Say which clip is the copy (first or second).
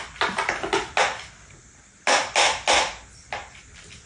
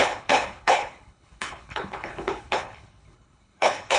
second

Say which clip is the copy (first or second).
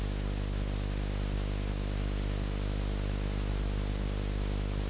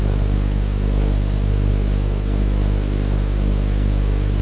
second